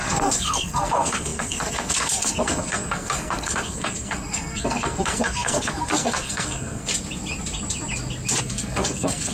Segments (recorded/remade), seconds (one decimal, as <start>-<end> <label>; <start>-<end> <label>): 0.0-6.9 remade; 6.9-8.4 recorded; 8.4-9.3 remade